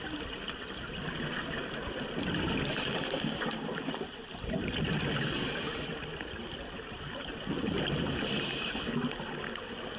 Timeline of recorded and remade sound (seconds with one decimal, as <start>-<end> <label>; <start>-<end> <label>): 0.0-10.0 recorded